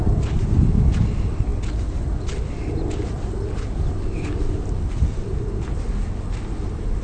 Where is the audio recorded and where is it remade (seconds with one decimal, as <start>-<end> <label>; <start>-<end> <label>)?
0.0-7.0 recorded